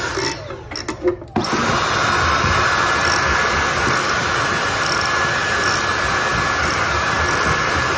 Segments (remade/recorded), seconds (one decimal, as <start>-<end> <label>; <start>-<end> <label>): 0.0-3.0 recorded; 3.0-4.5 remade; 4.5-8.0 recorded